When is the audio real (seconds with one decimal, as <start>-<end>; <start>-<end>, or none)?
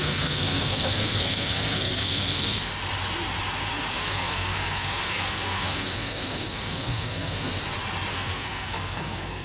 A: 2.7-3.9; 7.5-8.1